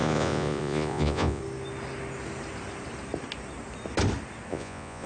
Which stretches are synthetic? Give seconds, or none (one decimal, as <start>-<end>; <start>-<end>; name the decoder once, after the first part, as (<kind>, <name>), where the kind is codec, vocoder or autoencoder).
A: 0.0-1.4 (vocoder, Vocos); 4.5-5.1